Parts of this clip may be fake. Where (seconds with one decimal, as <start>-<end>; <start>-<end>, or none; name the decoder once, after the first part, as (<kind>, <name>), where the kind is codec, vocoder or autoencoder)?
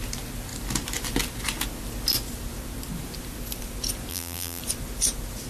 4.1-4.6 (vocoder, BigVGAN v2)